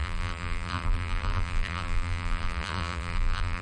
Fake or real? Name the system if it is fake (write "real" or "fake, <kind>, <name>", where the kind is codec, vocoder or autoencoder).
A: fake, vocoder, BigVGAN v2